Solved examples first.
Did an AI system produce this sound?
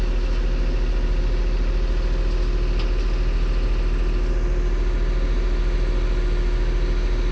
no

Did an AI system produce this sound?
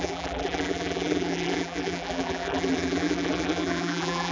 yes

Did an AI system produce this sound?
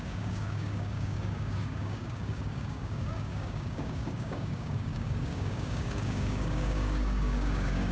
yes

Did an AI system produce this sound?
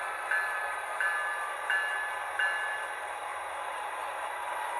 no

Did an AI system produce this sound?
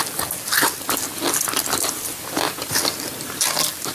no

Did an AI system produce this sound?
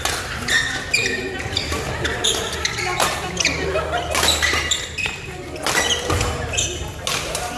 no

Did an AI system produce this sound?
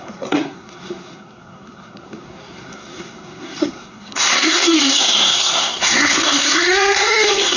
yes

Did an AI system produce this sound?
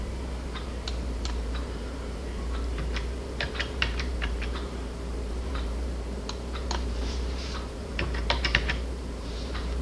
yes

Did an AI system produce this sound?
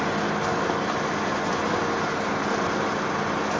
no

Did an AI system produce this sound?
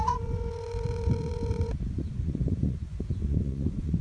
yes